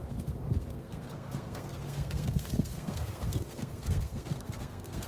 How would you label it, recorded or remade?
remade